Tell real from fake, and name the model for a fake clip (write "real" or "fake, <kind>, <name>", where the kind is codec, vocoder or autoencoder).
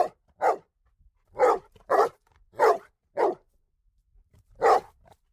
fake, vocoder, BigVGAN v2